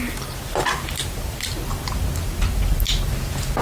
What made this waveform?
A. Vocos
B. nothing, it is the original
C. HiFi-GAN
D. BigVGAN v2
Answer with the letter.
B